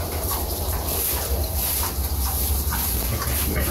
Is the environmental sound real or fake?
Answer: fake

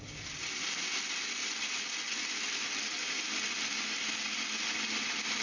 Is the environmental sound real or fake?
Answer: real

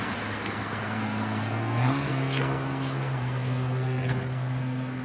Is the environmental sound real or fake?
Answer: fake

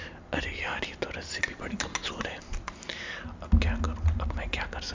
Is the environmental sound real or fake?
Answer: real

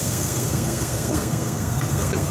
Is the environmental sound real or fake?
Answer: fake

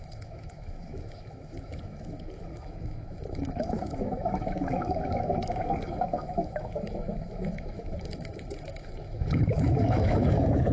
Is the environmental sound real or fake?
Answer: fake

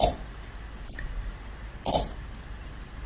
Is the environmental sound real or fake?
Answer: real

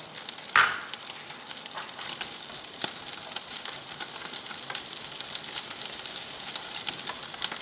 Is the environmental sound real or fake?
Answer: real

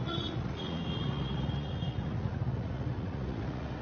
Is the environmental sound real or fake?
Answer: fake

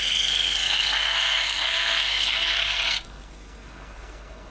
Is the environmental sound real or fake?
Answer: fake